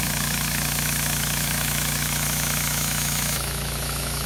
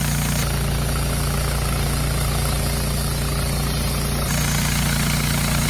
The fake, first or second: first